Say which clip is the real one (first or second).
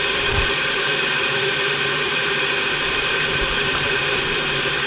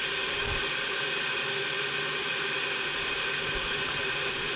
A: second